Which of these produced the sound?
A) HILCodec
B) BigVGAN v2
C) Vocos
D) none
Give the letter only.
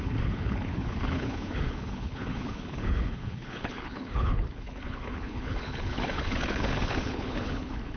A